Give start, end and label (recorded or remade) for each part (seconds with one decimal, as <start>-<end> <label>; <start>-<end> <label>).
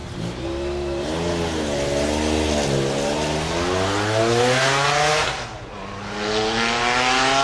0.0-7.4 recorded